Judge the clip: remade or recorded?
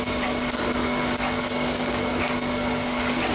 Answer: remade